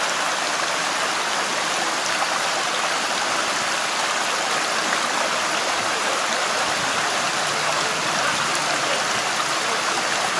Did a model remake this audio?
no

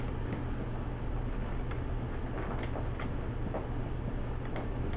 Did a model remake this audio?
no